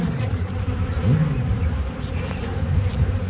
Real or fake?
fake